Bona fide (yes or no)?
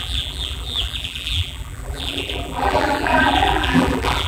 no